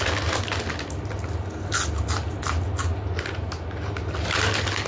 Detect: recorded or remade recorded